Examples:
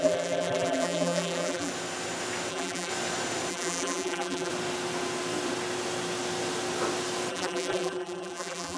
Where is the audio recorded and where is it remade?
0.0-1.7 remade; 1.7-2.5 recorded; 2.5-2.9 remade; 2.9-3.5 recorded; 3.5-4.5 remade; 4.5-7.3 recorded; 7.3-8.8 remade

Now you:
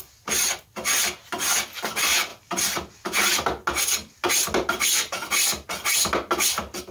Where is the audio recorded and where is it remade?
0.0-6.9 recorded

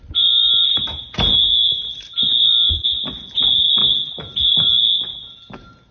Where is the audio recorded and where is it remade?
0.0-0.7 recorded; 0.7-1.4 remade; 1.4-2.8 recorded; 2.8-3.4 remade; 3.4-5.9 recorded

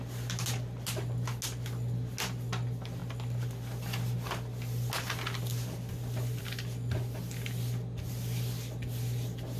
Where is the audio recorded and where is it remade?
0.0-9.6 recorded

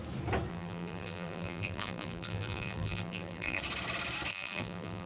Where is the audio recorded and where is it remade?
0.0-0.5 recorded; 0.5-3.6 remade; 3.6-4.3 recorded; 4.3-5.1 remade

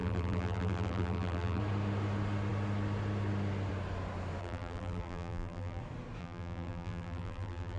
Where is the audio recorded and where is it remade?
0.0-1.6 remade; 1.6-4.4 recorded; 4.4-5.8 remade; 5.8-6.2 recorded; 6.2-7.8 remade

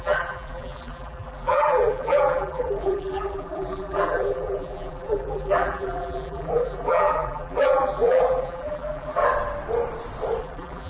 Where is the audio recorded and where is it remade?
0.0-9.2 remade; 9.2-10.4 recorded; 10.4-10.9 remade